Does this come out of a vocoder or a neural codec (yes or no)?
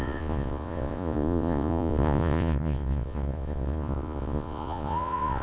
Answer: yes